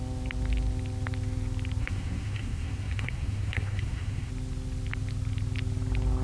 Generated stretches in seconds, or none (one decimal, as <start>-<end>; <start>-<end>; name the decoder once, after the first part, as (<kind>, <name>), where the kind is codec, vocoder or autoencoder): 1.8-4.3 (codec, SNAC)